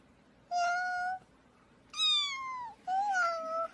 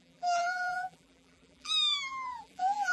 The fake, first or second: second